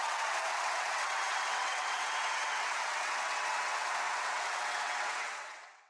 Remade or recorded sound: remade